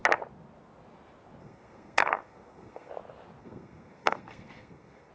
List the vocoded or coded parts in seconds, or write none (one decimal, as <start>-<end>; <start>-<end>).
1.4-2.9; 3.4-5.1